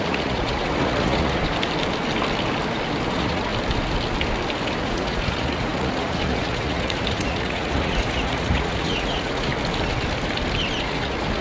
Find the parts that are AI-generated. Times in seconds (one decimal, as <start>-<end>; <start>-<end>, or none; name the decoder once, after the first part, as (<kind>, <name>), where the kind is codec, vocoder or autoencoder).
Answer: 0.0-1.4 (vocoder, Vocos); 3.1-3.5; 4.8-9.5; 10.8-11.4